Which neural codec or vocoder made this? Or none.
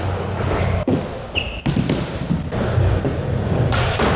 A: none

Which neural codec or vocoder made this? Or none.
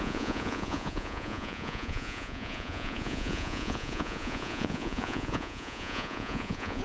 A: vocoder, Vocos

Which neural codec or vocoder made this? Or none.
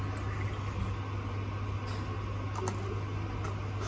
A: none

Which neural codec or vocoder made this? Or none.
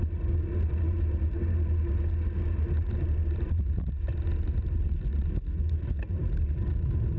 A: none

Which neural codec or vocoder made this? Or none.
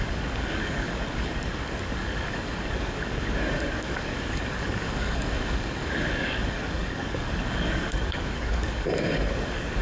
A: codec, DAC